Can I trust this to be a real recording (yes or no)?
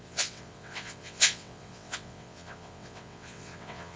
no